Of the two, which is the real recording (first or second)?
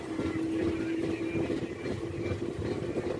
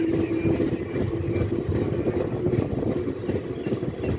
first